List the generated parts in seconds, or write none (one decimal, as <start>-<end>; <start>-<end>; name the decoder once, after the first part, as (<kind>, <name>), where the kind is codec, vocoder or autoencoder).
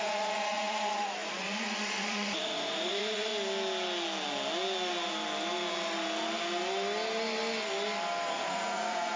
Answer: 0.0-3.3 (vocoder, Vocos); 8.3-9.2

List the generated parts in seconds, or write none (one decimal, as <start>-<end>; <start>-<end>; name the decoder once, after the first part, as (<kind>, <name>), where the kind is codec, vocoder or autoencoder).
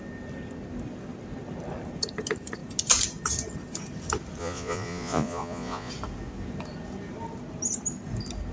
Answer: 4.4-5.9 (vocoder, Vocos)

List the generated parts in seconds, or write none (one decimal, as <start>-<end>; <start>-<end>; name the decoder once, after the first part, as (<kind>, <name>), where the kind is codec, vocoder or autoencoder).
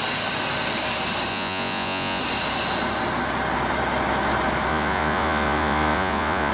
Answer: 1.3-2.2 (vocoder, Vocos); 4.7-6.5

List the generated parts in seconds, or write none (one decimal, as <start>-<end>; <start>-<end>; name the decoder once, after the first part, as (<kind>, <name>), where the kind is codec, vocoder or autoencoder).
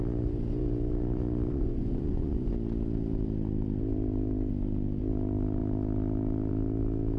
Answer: 1.5-2.5 (vocoder, Vocos)